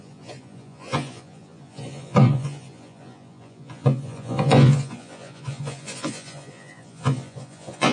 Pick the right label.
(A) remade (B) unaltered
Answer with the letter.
A